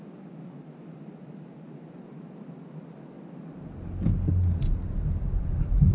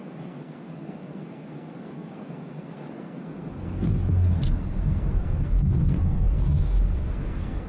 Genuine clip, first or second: first